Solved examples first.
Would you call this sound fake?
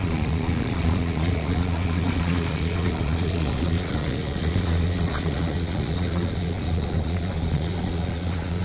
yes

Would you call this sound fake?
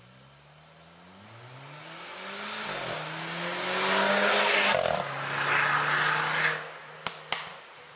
no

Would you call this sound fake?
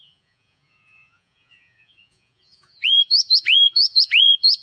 yes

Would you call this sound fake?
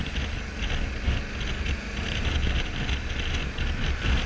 no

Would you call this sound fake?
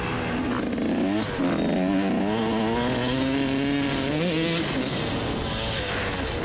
no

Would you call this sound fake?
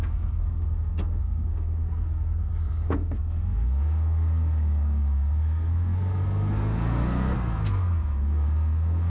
yes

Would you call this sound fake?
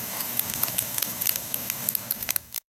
yes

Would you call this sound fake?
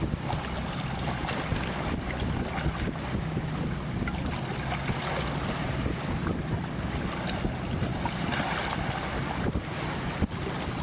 no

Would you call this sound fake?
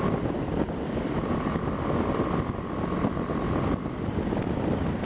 no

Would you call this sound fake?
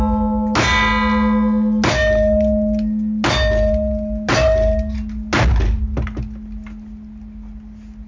no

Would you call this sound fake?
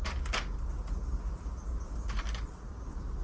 no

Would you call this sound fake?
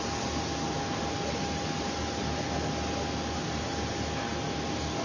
no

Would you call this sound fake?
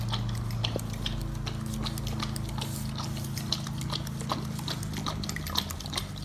no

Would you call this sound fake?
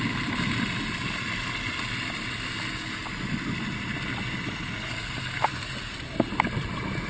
no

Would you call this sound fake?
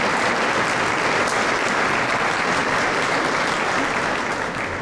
no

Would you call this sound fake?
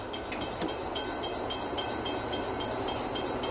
yes